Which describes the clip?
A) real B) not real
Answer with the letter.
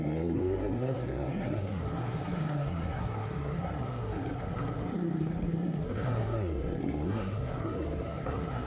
B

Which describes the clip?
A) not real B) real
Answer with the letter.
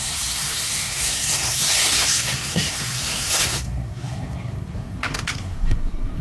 A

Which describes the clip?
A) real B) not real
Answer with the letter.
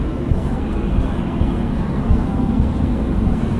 B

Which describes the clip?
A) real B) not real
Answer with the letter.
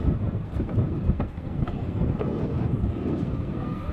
B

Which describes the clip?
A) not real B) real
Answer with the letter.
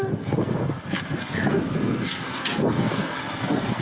A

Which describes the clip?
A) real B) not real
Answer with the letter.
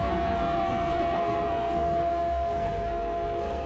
B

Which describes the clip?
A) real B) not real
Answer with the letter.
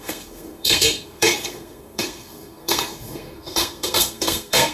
B